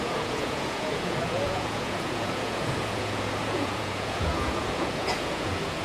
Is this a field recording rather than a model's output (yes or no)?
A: no